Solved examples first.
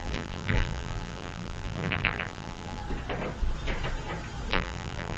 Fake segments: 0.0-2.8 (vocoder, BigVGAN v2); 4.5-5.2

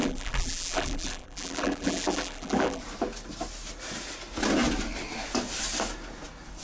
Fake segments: 0.0-2.8 (vocoder, BigVGAN v2)

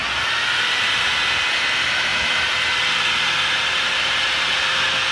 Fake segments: none

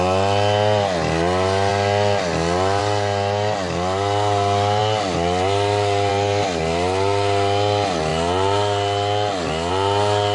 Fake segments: none

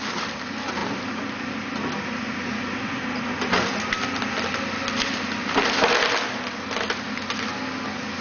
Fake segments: none

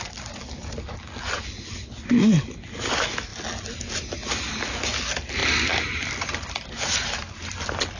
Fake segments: 5.4-8.0 (vocoder, BigVGAN v2)